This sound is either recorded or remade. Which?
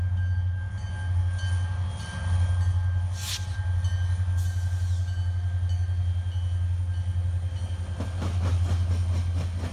recorded